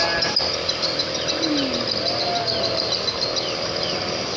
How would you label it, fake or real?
real